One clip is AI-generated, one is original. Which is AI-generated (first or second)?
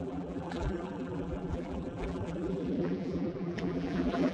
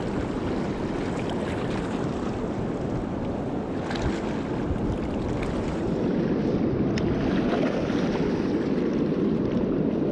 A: first